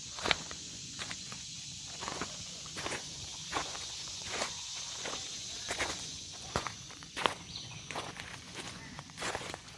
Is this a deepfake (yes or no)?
yes